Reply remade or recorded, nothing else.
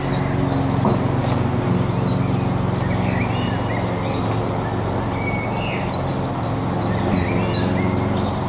recorded